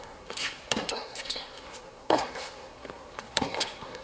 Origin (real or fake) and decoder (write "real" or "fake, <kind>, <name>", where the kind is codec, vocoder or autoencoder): fake, codec, SNAC